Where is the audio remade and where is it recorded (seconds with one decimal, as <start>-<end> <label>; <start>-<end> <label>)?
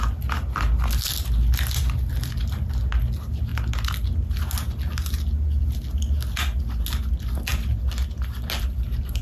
0.0-9.2 recorded